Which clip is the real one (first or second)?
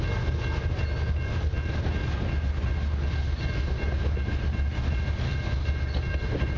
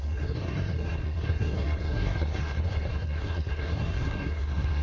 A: first